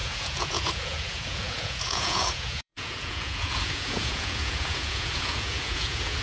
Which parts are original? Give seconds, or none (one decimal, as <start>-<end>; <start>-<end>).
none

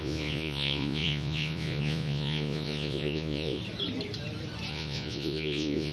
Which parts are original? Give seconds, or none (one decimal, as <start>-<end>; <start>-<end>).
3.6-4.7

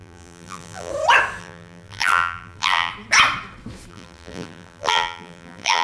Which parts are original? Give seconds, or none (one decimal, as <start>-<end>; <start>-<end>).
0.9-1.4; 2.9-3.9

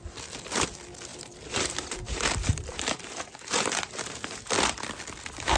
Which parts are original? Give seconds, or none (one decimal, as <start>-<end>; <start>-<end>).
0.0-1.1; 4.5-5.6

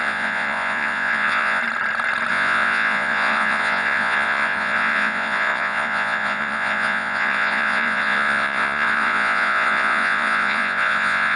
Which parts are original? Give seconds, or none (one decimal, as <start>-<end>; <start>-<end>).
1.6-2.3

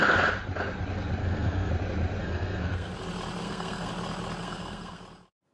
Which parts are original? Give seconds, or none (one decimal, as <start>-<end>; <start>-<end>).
0.0-1.2; 1.7-2.2; 2.9-3.4; 3.9-4.4; 5.0-5.5